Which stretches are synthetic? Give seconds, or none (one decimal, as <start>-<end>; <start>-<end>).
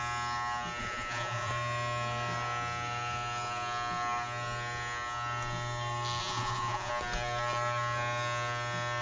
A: 0.8-1.5; 6.2-6.9